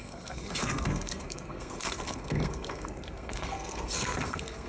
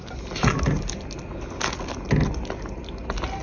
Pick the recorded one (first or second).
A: second